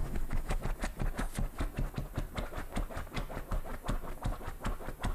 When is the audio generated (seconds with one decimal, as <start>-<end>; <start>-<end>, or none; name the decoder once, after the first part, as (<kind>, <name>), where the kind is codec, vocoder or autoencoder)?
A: 0.0-0.6 (autoencoder, DAC-VAE)